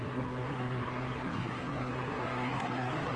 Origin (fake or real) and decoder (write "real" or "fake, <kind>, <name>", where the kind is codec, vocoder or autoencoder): fake, codec, SNAC